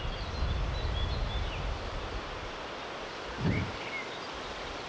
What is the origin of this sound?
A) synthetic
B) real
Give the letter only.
B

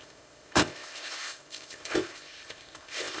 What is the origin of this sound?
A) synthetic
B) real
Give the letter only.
A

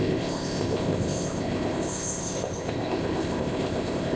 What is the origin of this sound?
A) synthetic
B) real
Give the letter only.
A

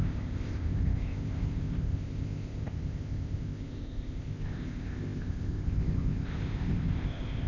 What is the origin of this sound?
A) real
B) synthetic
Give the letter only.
B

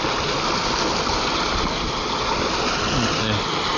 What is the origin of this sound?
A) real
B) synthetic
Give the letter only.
A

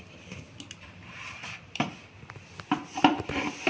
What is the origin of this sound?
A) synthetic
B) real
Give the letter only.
B